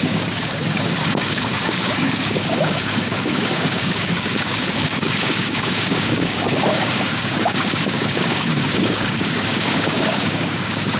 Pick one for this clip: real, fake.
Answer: fake